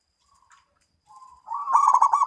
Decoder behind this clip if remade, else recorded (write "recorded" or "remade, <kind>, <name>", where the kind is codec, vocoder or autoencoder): recorded